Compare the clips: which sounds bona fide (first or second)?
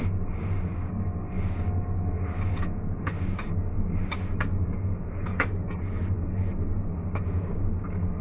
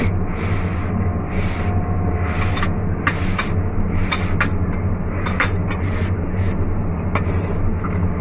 second